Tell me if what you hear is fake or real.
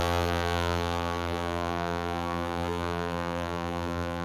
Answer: fake